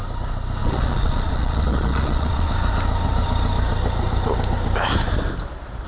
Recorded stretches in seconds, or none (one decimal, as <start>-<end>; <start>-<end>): 0.0-0.6; 2.5-5.9

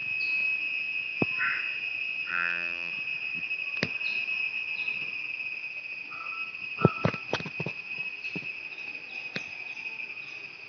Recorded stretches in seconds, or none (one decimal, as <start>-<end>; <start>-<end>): 0.0-2.3; 2.9-10.7

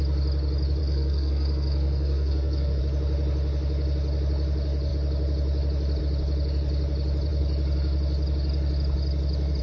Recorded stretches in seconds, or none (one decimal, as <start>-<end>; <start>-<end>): 0.0-0.8; 2.8-9.6

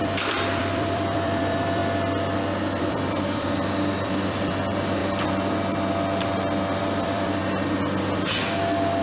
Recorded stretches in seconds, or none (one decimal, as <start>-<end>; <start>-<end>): 1.8-2.8; 5.0-6.8; 7.4-9.0

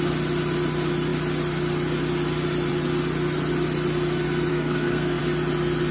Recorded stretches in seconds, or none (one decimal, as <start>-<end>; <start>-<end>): 0.0-4.5; 5.2-5.9

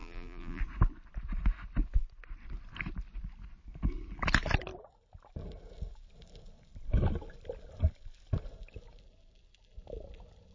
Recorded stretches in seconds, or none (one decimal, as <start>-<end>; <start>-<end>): 0.6-10.5

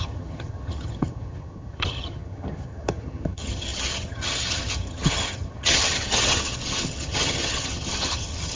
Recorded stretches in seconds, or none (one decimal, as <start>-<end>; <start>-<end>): none

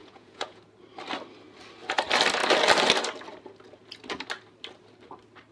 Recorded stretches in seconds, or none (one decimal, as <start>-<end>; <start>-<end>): 0.6-5.5